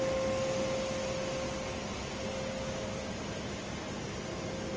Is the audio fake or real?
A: real